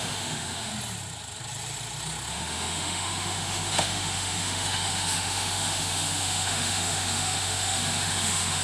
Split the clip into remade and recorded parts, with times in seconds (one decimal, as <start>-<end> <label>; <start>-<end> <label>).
0.0-0.7 remade; 0.7-2.3 recorded; 2.3-8.6 remade